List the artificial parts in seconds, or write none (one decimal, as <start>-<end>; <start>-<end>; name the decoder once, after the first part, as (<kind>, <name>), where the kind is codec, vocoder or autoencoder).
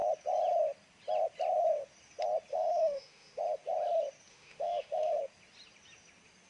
2.5-3.4 (autoencoder, DAC-VAE); 4.3-5.2